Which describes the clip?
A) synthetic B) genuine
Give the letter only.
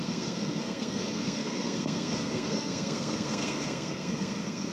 A